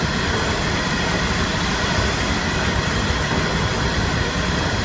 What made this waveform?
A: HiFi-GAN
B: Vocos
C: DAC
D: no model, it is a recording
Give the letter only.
D